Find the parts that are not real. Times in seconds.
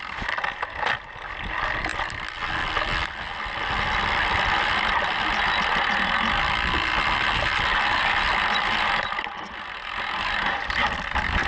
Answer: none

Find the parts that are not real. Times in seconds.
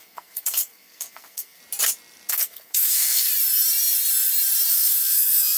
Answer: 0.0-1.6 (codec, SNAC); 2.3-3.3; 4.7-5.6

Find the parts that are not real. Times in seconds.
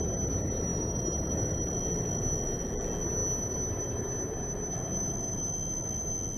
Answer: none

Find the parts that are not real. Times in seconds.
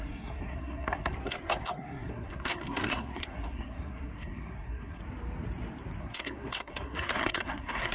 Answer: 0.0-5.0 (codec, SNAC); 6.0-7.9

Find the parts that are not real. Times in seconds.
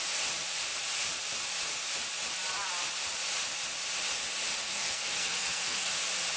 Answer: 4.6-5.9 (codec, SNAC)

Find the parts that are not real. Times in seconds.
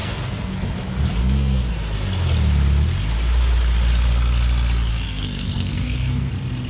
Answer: 0.0-0.5 (codec, SNAC); 1.2-1.7; 4.9-6.3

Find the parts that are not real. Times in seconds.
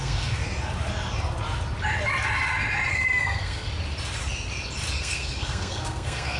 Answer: 0.0-0.4 (codec, SNAC); 2.9-3.7; 5.0-6.4